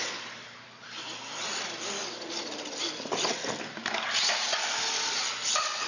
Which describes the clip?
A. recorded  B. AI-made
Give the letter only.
A